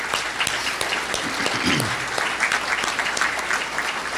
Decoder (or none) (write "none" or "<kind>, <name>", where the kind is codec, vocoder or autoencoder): none